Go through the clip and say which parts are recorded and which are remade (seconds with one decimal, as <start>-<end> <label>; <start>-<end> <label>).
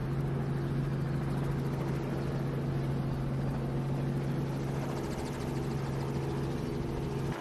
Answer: 0.0-7.4 recorded